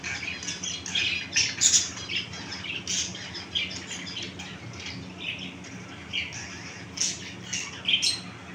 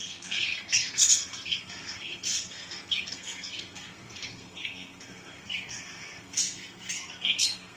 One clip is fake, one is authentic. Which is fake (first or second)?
second